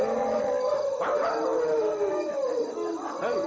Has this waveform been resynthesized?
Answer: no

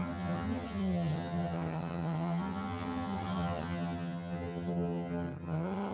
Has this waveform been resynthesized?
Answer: yes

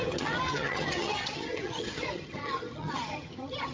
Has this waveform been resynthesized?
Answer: yes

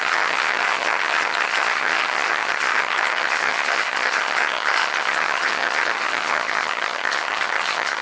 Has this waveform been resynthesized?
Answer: yes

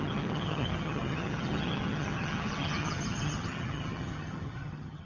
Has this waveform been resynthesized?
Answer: yes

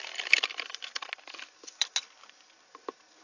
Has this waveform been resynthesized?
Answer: no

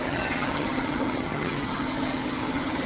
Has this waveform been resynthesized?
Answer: yes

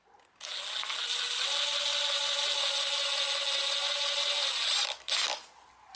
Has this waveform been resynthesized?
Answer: no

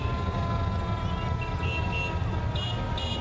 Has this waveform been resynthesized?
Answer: no